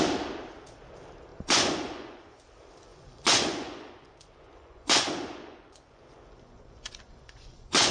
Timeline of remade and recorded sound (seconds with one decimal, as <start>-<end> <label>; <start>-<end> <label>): 0.0-1.3 recorded; 1.3-2.4 remade; 2.4-2.9 recorded; 2.9-7.9 remade